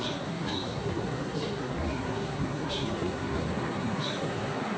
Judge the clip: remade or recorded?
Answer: remade